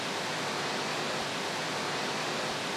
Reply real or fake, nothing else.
real